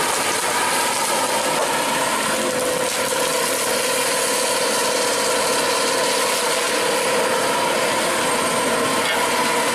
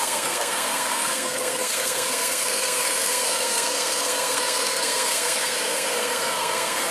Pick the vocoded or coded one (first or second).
second